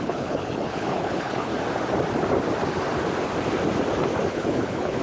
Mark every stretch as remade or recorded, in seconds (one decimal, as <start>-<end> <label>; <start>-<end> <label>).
0.0-1.5 remade; 1.5-4.3 recorded; 4.3-5.0 remade